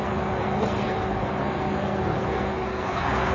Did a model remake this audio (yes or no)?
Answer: yes